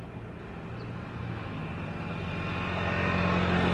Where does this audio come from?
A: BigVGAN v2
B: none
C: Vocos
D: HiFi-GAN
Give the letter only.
B